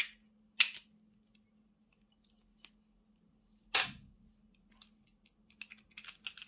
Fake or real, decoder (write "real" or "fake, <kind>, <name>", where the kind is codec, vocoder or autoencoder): real